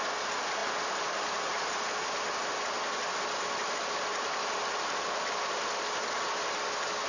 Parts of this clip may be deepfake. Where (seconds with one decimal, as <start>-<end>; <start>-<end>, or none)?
0.6-1.8; 4.1-5.4